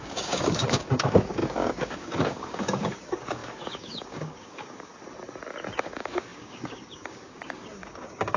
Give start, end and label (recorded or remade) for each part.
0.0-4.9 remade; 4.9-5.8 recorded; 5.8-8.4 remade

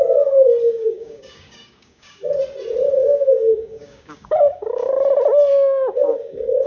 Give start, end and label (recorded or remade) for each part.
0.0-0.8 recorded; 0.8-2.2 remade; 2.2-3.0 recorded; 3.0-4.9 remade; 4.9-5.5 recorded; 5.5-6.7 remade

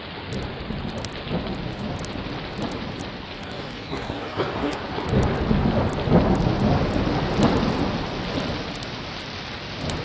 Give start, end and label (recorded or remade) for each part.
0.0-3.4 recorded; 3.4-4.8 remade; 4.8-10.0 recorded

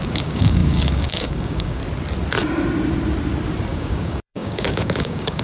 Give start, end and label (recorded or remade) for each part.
0.0-1.8 remade; 1.8-3.7 recorded; 3.7-5.4 remade

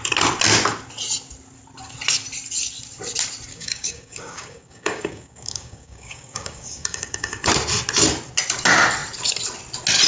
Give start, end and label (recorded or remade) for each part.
0.0-3.5 recorded; 3.5-7.5 remade; 7.5-10.1 recorded

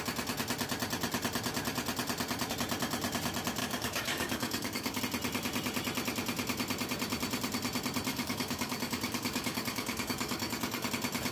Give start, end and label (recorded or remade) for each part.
0.0-3.6 recorded; 3.6-5.0 remade; 5.0-8.1 recorded; 8.1-10.9 remade; 10.9-11.3 recorded